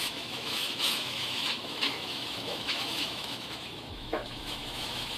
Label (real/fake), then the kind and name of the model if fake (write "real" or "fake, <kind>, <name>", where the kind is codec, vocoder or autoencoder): fake, autoencoder, DAC-VAE